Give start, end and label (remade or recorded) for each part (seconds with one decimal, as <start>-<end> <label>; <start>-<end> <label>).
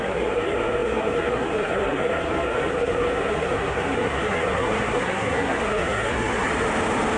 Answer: 0.0-6.5 remade; 6.5-7.2 recorded